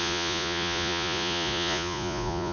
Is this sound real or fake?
fake